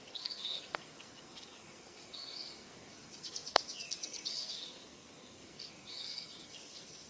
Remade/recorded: remade